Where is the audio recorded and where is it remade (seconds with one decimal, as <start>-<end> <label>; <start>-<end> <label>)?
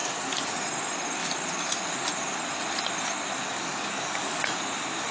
0.0-0.5 remade; 0.5-3.4 recorded; 3.4-4.6 remade; 4.6-5.1 recorded